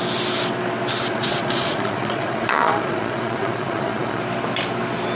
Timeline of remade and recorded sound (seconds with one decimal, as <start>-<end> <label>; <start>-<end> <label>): 0.0-1.1 recorded; 1.1-4.2 remade; 4.2-5.2 recorded